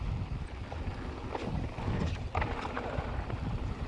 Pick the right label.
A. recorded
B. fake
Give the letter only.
A